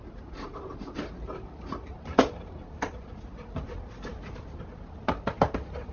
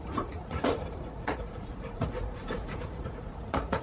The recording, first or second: first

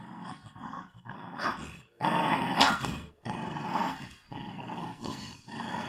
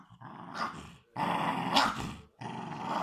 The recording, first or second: second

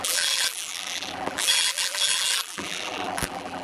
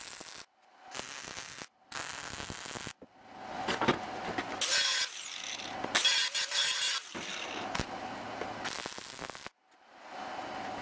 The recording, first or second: second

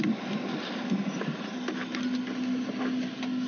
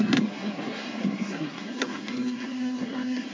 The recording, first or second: first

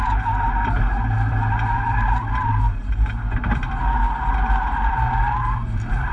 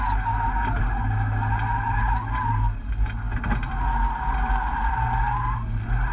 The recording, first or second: second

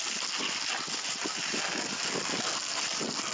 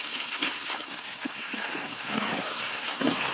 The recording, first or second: first